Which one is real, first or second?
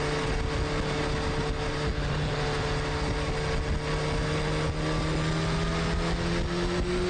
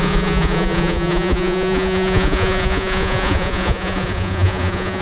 first